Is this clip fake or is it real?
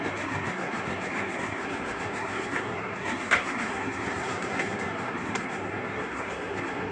fake